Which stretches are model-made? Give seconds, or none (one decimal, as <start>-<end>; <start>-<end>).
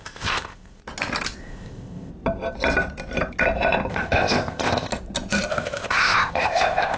0.0-0.8; 1.4-2.1; 3.9-4.9; 5.5-7.0